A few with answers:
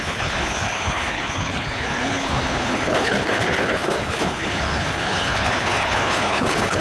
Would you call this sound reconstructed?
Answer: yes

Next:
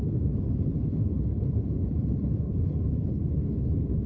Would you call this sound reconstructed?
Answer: yes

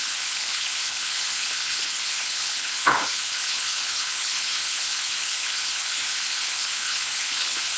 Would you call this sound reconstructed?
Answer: yes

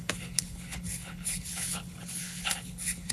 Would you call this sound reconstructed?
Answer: yes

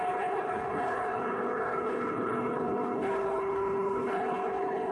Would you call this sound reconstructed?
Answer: yes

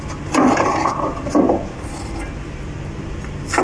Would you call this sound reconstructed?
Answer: no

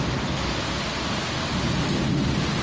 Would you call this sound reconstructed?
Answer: no